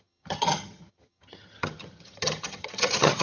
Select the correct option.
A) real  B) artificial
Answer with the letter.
B